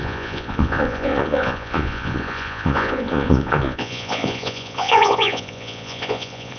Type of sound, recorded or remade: remade